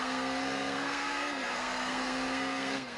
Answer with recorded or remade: remade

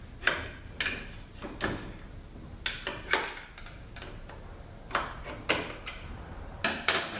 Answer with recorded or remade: recorded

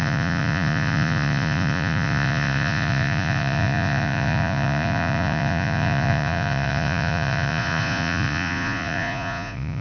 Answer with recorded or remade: remade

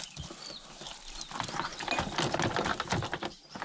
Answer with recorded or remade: recorded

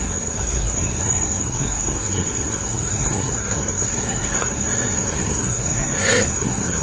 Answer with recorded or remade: remade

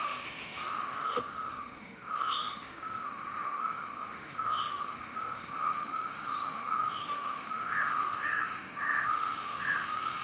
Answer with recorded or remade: remade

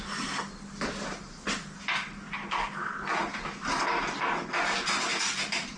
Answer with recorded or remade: recorded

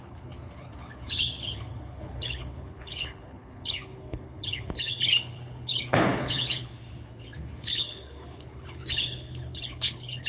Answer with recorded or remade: remade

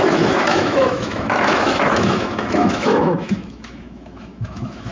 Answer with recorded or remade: remade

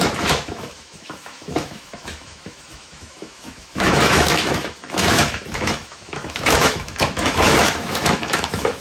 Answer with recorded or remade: remade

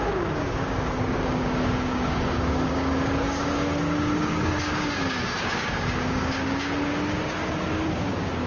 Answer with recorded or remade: remade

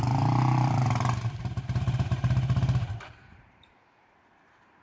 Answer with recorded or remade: remade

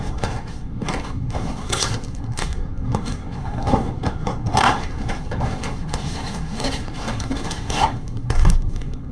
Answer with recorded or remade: remade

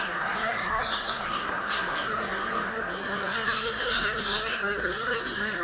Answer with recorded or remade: remade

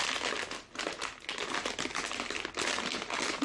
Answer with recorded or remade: recorded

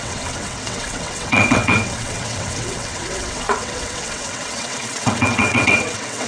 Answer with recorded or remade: remade